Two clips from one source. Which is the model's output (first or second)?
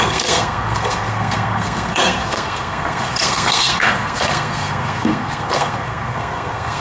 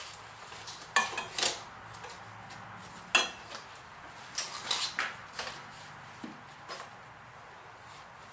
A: first